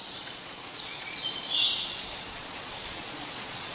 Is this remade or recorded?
remade